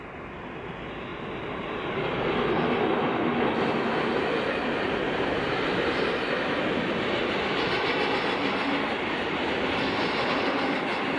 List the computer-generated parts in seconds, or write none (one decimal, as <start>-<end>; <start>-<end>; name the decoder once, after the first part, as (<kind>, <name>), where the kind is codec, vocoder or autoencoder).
none